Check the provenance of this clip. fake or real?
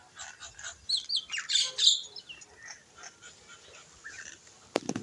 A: real